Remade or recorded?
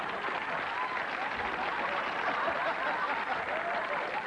recorded